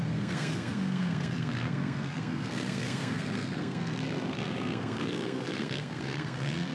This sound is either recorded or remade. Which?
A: remade